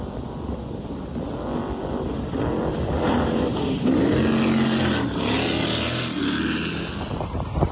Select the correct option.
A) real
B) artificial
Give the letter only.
A